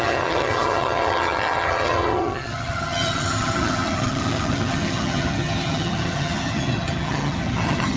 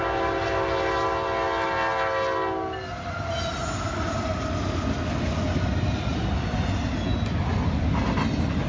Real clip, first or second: second